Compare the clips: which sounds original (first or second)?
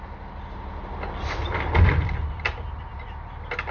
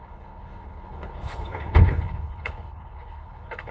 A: first